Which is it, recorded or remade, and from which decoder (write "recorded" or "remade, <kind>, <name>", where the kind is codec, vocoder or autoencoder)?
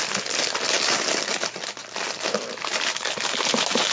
recorded